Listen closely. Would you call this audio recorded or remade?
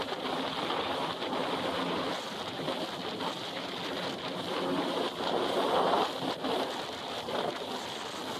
recorded